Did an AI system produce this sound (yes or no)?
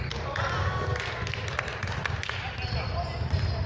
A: no